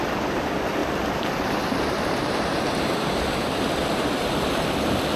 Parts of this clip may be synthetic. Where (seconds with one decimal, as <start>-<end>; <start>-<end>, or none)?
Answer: 0.8-3.9